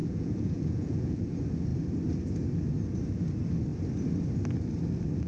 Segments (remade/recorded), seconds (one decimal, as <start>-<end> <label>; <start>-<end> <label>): 0.0-1.2 remade; 1.2-5.3 recorded